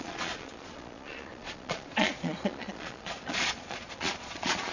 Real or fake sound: fake